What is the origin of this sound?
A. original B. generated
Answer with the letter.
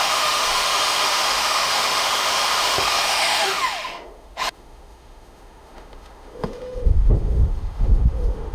B